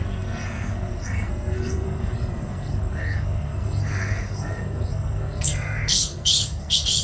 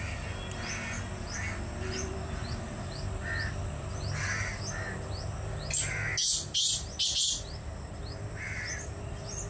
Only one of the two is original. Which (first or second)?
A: second